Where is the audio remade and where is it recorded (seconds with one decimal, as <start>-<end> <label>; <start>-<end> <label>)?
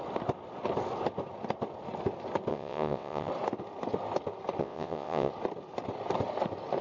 0.0-2.5 recorded; 2.5-3.3 remade; 3.3-4.6 recorded; 4.6-5.3 remade; 5.3-6.8 recorded